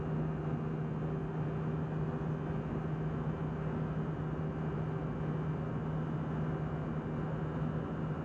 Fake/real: real